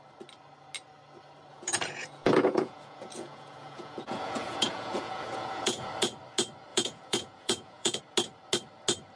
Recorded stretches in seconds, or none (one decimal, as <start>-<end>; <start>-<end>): 0.0-1.5; 5.9-6.7; 8.0-9.2